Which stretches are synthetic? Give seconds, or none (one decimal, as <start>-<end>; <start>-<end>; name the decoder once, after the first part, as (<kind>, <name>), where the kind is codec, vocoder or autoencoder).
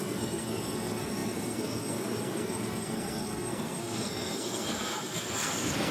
0.0-5.9 (codec, SNAC)